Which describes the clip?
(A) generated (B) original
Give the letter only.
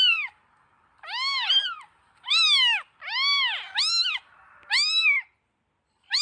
B